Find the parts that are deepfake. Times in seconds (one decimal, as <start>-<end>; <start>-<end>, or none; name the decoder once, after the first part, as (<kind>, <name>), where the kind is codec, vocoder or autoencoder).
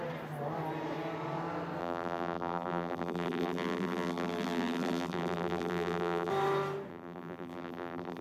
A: 1.8-6.3 (vocoder, BigVGAN v2); 6.9-8.2